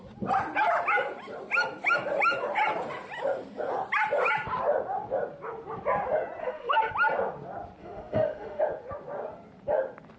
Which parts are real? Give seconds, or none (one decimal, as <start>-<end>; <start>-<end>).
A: 0.0-6.4; 6.9-7.8; 8.6-10.2